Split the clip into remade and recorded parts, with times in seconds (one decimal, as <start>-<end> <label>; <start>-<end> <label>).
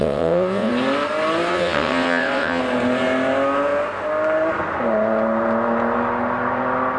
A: 0.0-0.7 remade; 0.7-1.5 recorded; 1.5-2.6 remade; 2.6-7.0 recorded